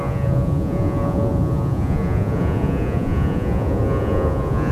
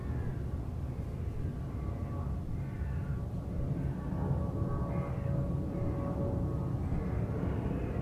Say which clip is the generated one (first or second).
first